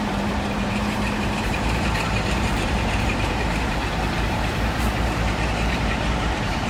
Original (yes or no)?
no